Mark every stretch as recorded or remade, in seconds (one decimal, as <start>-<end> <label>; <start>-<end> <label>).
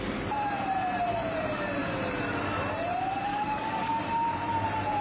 0.0-3.3 recorded; 3.3-4.0 remade; 4.0-5.0 recorded